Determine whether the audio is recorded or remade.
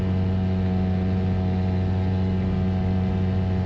recorded